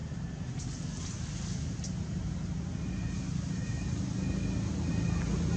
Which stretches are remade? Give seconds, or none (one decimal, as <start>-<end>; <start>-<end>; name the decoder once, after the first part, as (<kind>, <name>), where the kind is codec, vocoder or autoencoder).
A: none